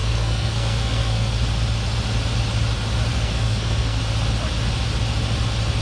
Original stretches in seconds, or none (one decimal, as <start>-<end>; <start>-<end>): 1.3-3.1; 4.0-5.8